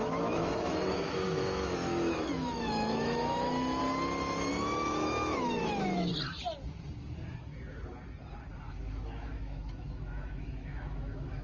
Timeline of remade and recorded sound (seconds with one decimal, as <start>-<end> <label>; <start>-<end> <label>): 0.0-3.8 remade; 3.8-4.5 recorded; 4.5-6.1 remade; 6.1-8.7 recorded; 8.7-11.4 remade